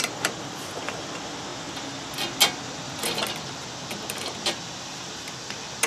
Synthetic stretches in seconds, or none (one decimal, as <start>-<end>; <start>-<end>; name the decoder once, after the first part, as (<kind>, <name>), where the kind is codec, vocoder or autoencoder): none